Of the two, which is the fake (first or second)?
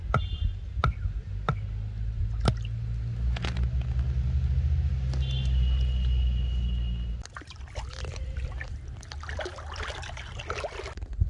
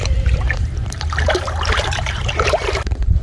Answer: second